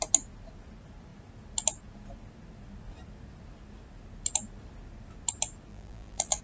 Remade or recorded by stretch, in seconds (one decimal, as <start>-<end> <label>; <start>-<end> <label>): 0.0-5.7 recorded; 5.7-6.4 remade